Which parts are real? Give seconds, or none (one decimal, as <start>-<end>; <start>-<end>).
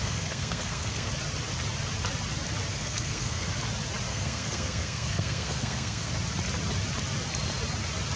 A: 1.1-2.7; 3.5-4.1; 6.1-8.2